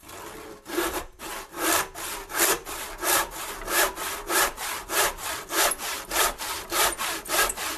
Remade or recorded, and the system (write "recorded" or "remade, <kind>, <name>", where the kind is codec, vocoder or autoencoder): remade, vocoder, BigVGAN v2